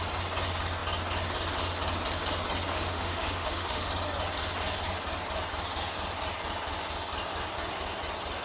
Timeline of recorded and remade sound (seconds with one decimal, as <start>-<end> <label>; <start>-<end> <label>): 0.0-2.7 recorded; 2.7-3.9 remade; 3.9-8.4 recorded